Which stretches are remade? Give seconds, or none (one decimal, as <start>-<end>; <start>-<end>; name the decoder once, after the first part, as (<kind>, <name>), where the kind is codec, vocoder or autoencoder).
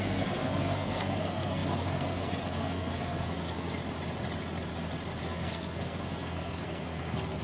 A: 0.0-3.8 (codec, SNAC); 5.2-7.4